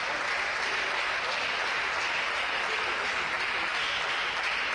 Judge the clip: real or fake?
real